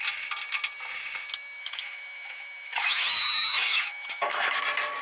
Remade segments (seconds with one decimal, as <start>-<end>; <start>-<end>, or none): 1.6-4.6